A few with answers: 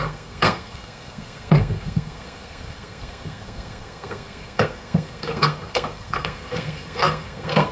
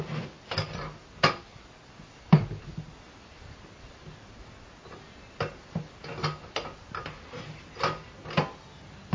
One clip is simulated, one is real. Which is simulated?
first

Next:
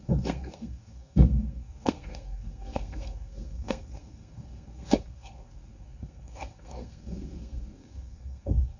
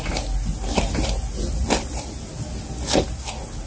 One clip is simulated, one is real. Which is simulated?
first